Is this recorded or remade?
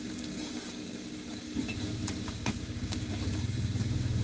remade